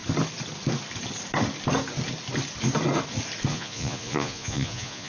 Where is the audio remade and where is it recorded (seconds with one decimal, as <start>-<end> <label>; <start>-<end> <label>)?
0.0-3.5 recorded; 3.5-5.1 remade